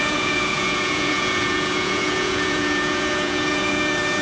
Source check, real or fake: fake